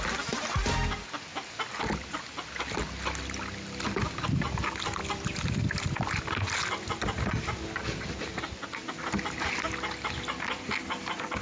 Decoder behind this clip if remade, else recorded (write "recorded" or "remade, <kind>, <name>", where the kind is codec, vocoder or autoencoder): recorded